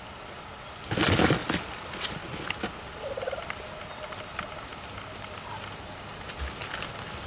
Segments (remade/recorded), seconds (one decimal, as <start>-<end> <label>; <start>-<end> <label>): 0.0-7.3 recorded